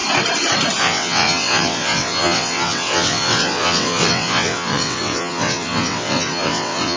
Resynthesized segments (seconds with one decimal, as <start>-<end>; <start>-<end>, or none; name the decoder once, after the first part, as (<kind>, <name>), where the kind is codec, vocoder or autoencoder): 0.8-7.0 (vocoder, WaveNeXt)